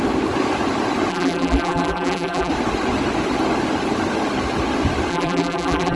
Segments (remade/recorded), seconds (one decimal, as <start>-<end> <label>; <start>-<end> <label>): 0.0-1.1 recorded; 1.1-2.5 remade; 2.5-5.1 recorded; 5.1-6.0 remade

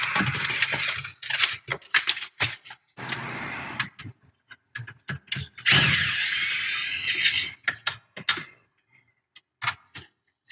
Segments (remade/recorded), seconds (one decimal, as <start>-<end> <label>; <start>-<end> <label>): 0.0-1.7 recorded; 1.7-4.0 remade; 4.0-10.5 recorded

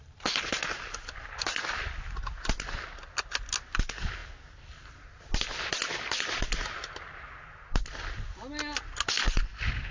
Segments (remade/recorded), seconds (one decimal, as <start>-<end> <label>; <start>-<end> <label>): 0.0-9.9 recorded

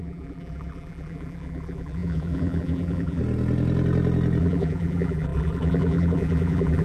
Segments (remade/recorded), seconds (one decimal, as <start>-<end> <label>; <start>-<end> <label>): 0.0-3.2 remade; 3.2-4.4 recorded; 4.4-6.8 remade

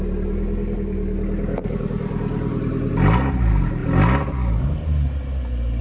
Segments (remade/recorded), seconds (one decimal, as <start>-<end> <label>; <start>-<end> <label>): 0.0-1.6 recorded; 1.6-2.9 remade; 2.9-5.8 recorded

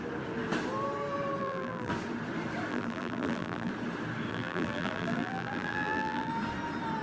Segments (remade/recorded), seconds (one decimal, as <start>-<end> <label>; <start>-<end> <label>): 0.0-1.4 recorded; 1.4-1.9 remade; 1.9-2.7 recorded; 2.7-3.7 remade; 3.7-4.3 recorded; 4.3-6.3 remade; 6.3-7.0 recorded